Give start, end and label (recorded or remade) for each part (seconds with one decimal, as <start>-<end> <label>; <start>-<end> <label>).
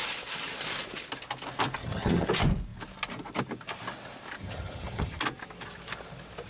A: 0.0-1.8 recorded; 1.8-2.3 remade; 2.3-4.4 recorded; 4.4-5.2 remade; 5.2-6.5 recorded